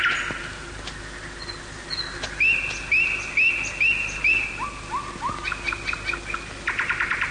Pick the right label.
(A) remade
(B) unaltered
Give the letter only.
B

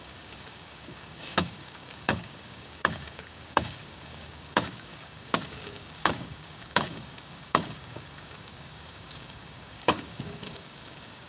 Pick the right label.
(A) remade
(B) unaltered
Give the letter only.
A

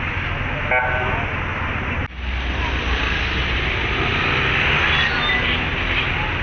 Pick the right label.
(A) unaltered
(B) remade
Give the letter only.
A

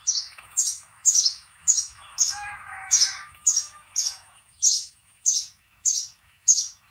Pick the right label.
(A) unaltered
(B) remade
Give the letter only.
B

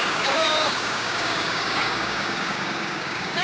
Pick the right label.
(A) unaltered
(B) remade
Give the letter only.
B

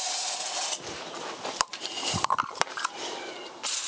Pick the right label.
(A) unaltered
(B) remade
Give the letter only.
A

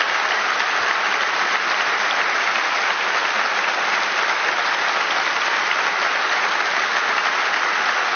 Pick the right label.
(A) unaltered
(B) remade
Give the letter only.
A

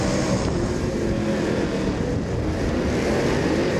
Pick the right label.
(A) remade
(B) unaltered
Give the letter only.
B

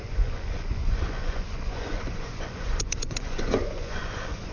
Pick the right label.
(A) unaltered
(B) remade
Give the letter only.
B